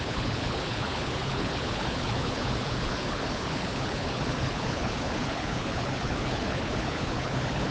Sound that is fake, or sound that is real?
fake